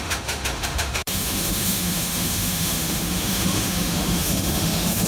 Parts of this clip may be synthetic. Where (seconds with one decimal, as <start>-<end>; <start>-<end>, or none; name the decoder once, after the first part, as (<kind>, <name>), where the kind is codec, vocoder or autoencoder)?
0.0-5.1 (autoencoder, DAC-VAE)

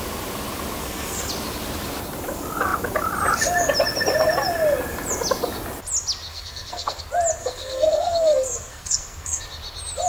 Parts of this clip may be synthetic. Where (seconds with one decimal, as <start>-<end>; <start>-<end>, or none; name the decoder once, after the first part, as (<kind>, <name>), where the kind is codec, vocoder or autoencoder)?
0.8-1.3 (codec, SNAC); 6.3-7.0; 7.4-9.4

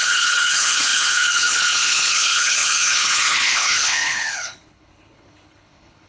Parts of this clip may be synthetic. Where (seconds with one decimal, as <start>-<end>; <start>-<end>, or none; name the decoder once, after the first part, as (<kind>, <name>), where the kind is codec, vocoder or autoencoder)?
0.0-6.1 (codec, HILCodec)

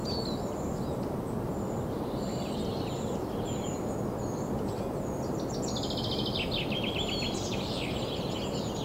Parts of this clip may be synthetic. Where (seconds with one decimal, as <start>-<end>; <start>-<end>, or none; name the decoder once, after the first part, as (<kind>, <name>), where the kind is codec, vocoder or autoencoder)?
none

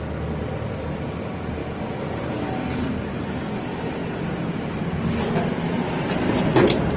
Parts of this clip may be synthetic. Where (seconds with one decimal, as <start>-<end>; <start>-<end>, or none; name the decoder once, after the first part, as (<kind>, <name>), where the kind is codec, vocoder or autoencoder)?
1.6-3.4 (vocoder, BigVGAN v2)